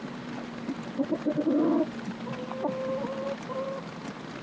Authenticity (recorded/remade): recorded